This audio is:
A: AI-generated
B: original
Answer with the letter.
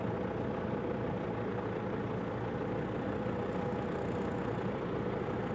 B